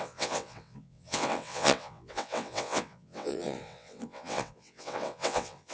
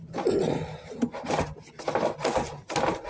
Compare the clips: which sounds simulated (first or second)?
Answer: first